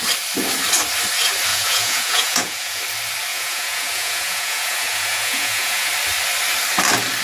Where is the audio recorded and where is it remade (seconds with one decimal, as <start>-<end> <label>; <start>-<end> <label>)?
0.0-1.5 recorded; 1.5-2.8 remade; 2.8-3.3 recorded; 3.3-5.9 remade; 5.9-7.2 recorded